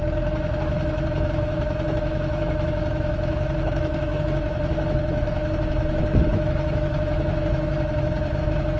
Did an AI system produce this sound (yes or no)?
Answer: yes